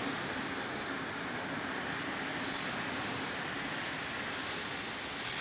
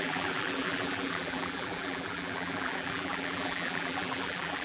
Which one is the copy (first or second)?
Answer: second